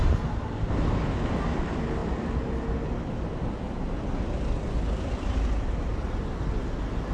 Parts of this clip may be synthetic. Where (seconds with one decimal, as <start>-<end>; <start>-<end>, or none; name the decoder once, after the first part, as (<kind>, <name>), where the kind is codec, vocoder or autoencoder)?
none